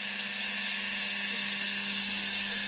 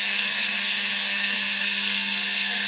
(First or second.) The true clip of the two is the first